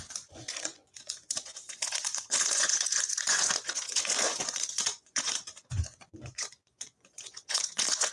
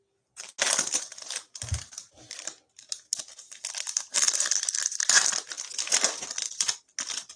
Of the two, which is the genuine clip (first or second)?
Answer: second